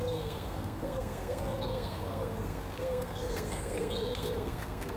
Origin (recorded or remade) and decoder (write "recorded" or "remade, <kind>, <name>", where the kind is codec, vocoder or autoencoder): remade, codec, SNAC